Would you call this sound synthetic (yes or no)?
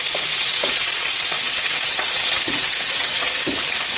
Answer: yes